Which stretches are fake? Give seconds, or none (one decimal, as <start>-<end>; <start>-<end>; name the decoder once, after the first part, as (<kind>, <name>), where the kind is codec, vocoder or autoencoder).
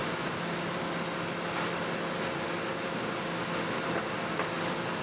none